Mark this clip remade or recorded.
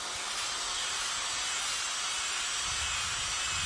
recorded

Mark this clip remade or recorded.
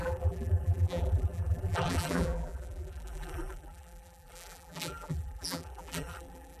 remade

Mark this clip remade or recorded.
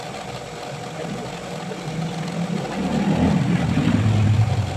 recorded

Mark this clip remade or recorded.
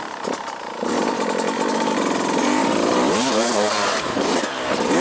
remade